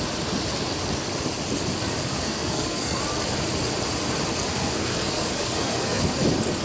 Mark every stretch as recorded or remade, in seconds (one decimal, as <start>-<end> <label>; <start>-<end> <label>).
0.0-2.1 recorded; 2.1-3.0 remade; 3.0-4.5 recorded; 4.5-6.0 remade; 6.0-6.6 recorded